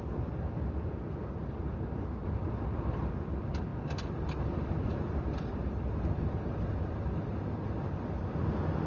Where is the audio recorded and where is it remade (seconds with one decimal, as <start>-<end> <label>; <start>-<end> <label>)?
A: 0.0-8.9 recorded